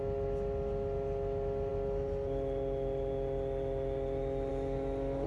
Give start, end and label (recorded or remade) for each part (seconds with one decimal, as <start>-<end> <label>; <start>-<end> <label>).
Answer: 0.0-5.3 recorded